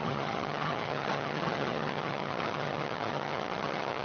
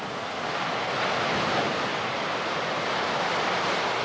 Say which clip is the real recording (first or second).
second